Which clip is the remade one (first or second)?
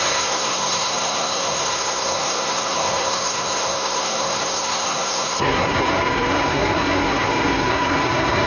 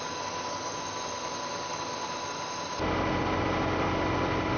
first